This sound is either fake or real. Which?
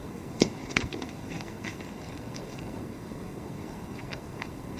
fake